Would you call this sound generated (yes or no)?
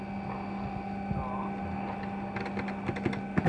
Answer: no